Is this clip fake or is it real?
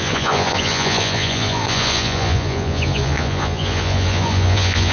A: fake